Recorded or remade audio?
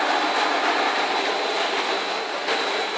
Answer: recorded